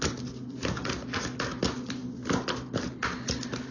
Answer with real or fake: real